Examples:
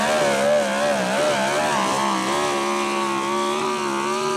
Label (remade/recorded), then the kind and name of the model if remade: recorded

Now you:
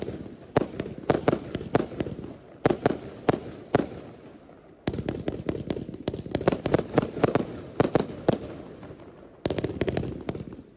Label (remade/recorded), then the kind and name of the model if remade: recorded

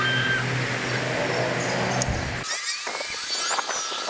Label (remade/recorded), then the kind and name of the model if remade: recorded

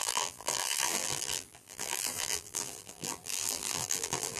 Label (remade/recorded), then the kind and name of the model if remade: remade, vocoder, BigVGAN v2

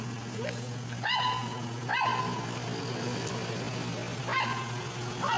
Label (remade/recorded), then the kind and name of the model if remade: recorded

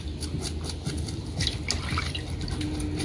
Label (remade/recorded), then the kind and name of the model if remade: recorded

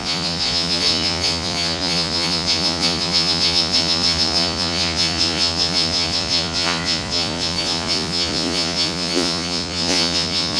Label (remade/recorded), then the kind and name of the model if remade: remade, vocoder, Vocos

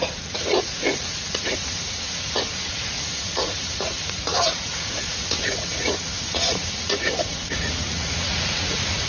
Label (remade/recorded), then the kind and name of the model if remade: remade, vocoder, Vocos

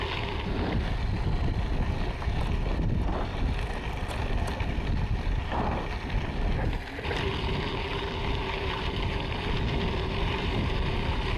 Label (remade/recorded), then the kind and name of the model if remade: recorded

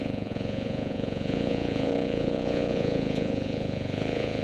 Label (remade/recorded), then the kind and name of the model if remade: remade, vocoder, Vocos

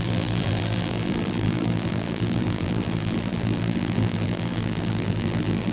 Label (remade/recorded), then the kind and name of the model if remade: remade, vocoder, BigVGAN v2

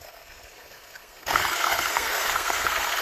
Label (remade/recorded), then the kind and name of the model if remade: remade, codec, SNAC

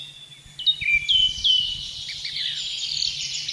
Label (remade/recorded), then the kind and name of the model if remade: recorded